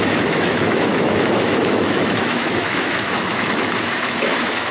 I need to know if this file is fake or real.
fake